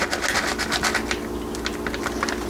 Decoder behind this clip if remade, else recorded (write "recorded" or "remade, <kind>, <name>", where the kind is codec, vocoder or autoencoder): recorded